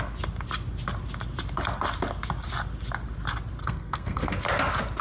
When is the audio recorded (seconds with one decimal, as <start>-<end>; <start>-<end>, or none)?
0.0-3.6; 4.3-5.0